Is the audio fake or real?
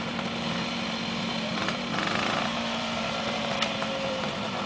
fake